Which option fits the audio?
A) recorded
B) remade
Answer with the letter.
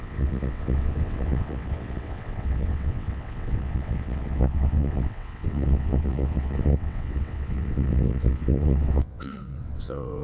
B